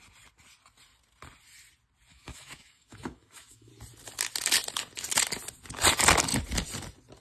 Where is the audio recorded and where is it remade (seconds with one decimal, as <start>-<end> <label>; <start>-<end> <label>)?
0.0-2.1 recorded; 2.1-3.7 remade; 3.7-7.2 recorded